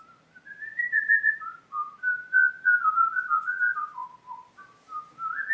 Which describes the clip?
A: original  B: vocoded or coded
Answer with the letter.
A